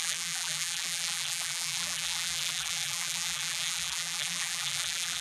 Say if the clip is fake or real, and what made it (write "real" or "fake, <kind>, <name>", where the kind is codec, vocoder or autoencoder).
fake, vocoder, BigVGAN v2